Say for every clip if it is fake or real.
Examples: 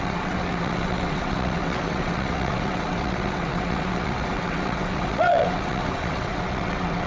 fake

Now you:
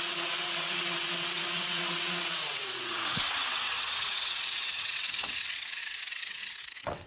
fake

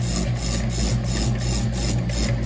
real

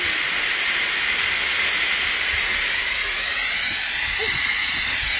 real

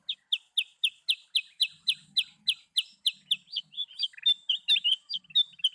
real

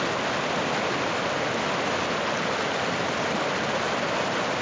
real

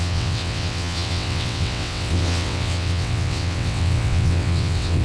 fake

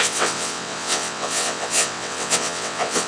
fake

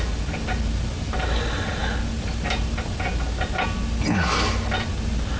real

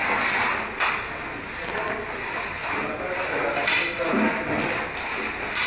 real